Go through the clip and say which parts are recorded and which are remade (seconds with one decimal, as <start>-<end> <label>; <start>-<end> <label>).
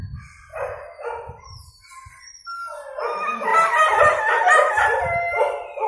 0.0-3.5 recorded; 3.5-5.4 remade; 5.4-5.9 recorded